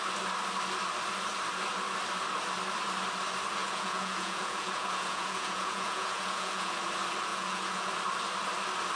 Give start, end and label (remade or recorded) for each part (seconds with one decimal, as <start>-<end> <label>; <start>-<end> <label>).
0.0-3.6 recorded; 3.6-6.7 remade; 6.7-7.3 recorded; 7.3-7.9 remade; 7.9-9.0 recorded